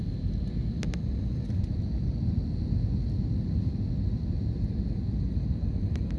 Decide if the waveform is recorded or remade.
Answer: recorded